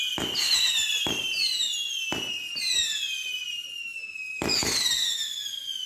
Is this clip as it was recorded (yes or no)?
yes